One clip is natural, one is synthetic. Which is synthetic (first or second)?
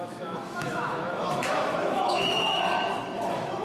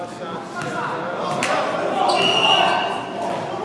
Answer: first